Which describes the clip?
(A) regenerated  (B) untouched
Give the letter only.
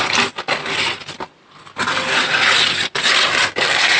B